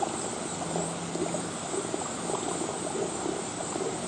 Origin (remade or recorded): recorded